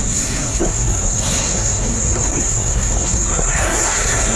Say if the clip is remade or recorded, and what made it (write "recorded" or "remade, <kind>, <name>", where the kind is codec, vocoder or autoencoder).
remade, codec, SNAC